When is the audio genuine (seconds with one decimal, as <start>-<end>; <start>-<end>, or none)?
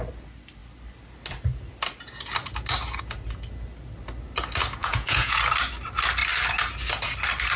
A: 0.0-4.8; 5.4-7.6